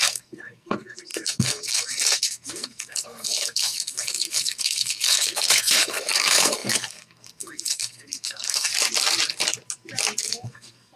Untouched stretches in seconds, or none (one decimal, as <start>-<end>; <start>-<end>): 8.7-10.2